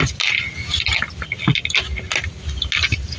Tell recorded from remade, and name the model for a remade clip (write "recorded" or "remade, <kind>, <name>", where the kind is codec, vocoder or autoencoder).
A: recorded